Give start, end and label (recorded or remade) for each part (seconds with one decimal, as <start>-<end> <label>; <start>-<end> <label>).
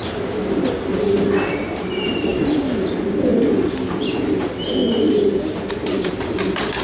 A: 0.0-1.6 recorded; 1.6-2.6 remade; 2.6-3.3 recorded; 3.3-4.0 remade; 4.0-4.8 recorded; 4.8-6.1 remade; 6.1-6.8 recorded